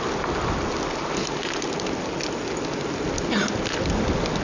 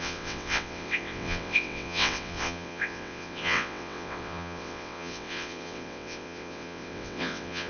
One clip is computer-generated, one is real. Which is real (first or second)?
first